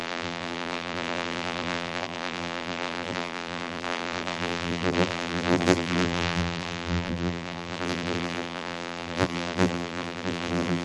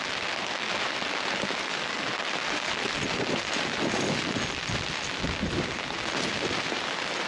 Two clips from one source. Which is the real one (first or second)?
second